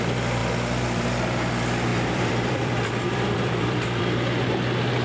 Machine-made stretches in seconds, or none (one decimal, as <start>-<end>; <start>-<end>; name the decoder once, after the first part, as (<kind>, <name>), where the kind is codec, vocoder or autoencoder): 1.9-4.0 (vocoder, BigVGAN v2)